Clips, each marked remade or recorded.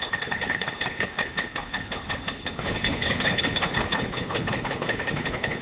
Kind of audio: remade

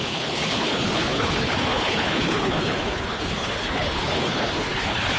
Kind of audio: remade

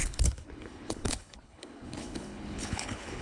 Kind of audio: remade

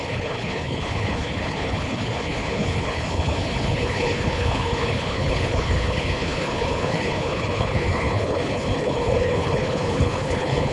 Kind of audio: remade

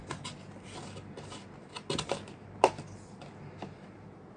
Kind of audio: recorded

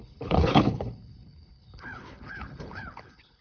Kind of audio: remade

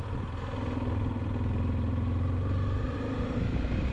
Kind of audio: recorded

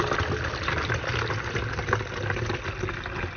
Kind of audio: recorded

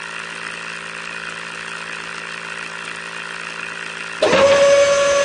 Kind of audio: recorded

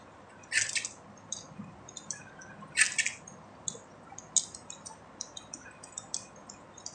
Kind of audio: recorded